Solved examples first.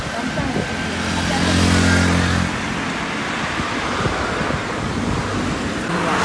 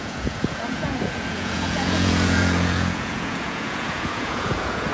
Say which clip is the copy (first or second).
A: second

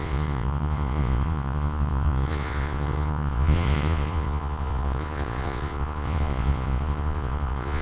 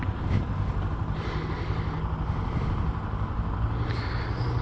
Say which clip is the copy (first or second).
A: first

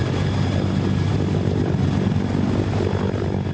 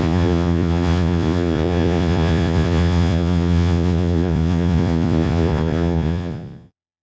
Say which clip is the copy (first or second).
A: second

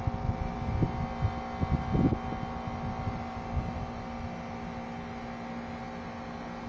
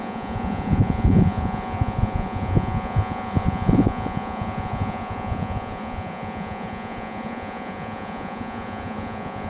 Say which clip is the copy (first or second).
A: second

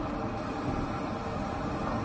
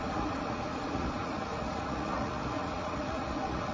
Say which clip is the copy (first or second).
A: second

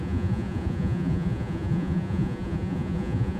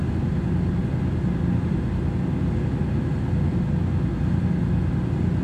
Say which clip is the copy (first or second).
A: first